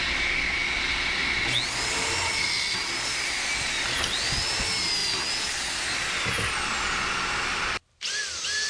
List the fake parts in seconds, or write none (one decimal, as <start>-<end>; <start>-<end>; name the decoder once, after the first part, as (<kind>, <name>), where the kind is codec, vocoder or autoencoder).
none